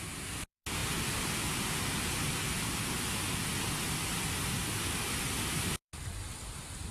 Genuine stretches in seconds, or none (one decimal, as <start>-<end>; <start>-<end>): 0.0-6.9